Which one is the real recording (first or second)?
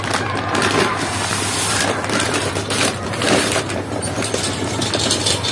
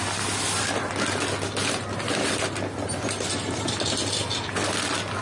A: second